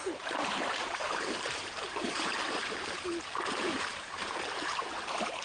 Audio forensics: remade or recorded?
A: remade